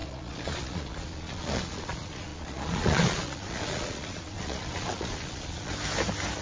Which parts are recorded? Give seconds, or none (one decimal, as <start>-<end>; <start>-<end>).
5.7-6.4